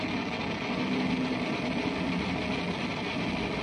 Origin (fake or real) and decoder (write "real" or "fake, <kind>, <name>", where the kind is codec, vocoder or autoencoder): real